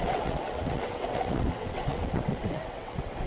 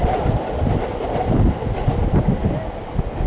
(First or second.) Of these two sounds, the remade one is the first